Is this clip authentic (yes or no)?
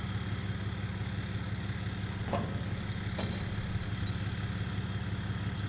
yes